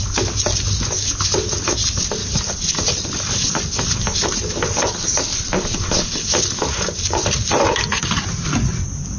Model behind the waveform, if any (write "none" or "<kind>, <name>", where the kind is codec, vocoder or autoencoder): none